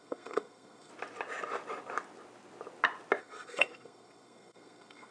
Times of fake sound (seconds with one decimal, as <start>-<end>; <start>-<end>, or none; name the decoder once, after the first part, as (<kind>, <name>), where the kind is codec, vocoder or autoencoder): 0.0-0.9 (codec, SNAC); 3.2-5.1